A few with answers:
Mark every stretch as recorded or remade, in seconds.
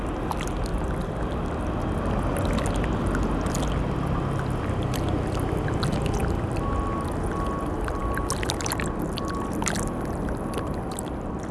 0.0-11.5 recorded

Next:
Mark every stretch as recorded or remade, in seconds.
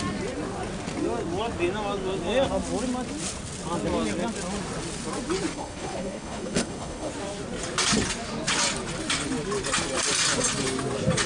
0.0-5.5 recorded; 5.5-7.1 remade; 7.1-11.3 recorded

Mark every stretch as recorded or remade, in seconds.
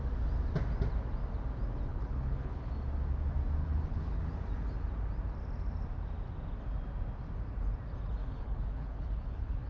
0.0-1.9 recorded; 1.9-2.7 remade; 2.7-3.6 recorded; 3.6-4.2 remade; 4.2-8.2 recorded; 8.2-9.7 remade